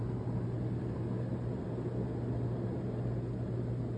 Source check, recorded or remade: recorded